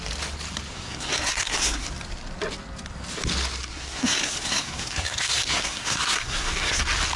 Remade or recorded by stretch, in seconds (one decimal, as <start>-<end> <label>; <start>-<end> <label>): 0.0-0.7 recorded; 0.7-1.9 remade; 1.9-3.6 recorded; 3.6-6.8 remade; 6.8-7.2 recorded